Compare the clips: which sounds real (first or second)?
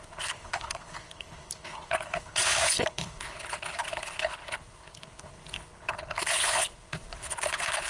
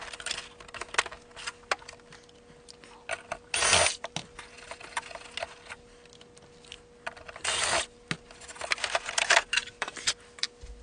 second